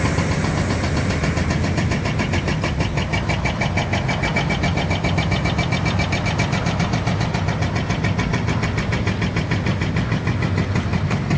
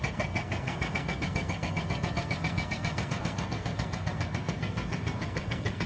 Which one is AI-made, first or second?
second